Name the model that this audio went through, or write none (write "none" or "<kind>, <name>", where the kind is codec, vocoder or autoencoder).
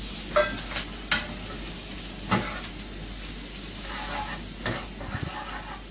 none